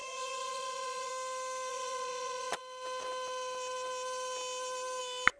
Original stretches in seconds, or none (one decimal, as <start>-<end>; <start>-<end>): 1.1-1.7; 2.6-5.4